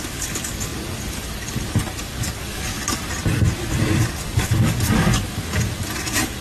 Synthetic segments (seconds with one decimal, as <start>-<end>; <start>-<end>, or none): 0.0-3.0; 4.1-6.4